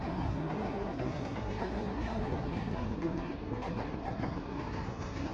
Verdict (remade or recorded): remade